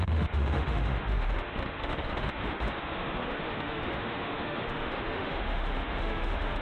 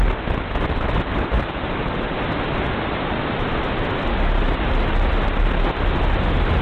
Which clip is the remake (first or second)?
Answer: first